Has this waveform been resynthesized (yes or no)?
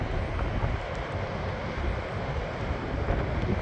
no